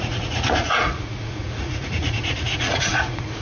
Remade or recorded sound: remade